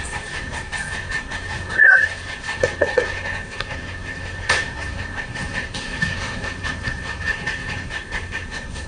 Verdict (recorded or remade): remade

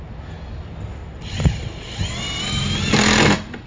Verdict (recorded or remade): recorded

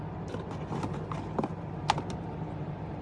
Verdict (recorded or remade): recorded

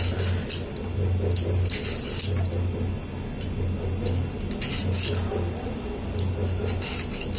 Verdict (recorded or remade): recorded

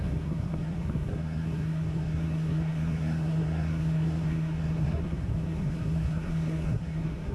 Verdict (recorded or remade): remade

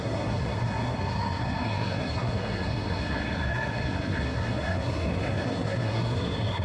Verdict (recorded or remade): remade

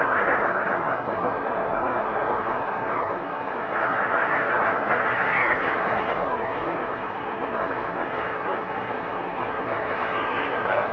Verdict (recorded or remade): remade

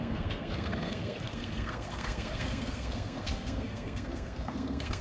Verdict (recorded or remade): remade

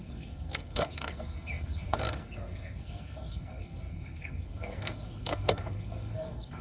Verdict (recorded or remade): remade